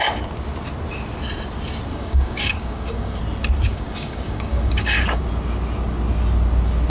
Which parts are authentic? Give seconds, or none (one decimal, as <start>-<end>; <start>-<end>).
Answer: 0.0-1.9; 3.2-3.7; 5.2-6.9